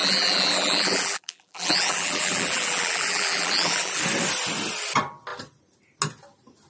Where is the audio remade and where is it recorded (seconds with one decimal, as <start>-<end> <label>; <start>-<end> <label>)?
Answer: 0.0-4.0 remade; 4.0-6.7 recorded